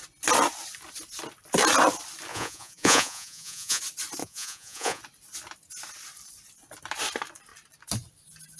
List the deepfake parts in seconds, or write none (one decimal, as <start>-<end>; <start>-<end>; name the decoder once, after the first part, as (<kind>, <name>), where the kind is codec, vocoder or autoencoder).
2.3-3.8 (vocoder, Vocos); 4.2-5.0